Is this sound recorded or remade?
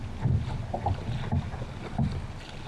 recorded